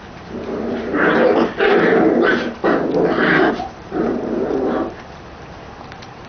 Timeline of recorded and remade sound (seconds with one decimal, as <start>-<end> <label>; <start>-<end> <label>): 0.0-1.1 remade; 1.1-1.6 recorded; 1.6-2.6 remade; 2.6-3.5 recorded; 3.5-6.3 remade